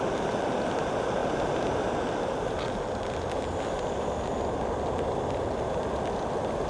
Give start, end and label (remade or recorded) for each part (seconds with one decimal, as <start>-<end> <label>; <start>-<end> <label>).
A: 0.0-6.7 recorded